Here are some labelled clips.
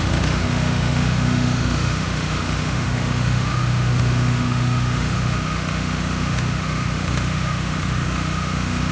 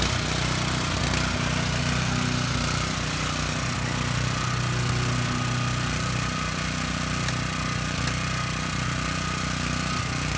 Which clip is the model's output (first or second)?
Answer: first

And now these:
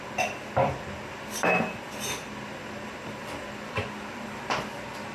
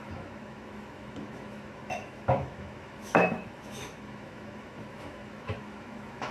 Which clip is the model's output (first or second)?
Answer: second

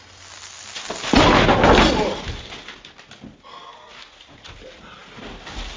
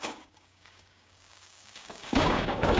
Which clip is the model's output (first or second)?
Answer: second